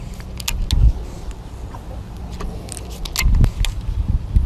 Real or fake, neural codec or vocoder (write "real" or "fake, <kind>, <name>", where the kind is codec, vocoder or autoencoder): real